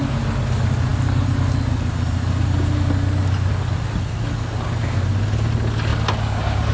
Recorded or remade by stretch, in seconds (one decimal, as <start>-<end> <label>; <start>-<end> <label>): 0.0-6.7 recorded